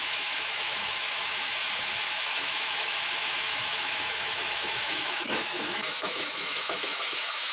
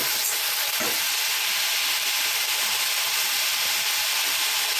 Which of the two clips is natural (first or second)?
second